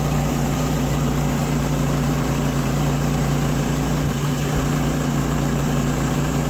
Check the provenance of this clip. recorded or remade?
remade